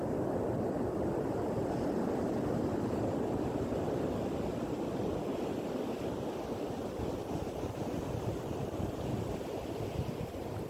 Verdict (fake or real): real